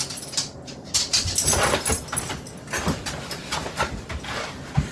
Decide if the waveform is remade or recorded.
recorded